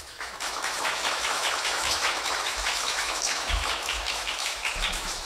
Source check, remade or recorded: remade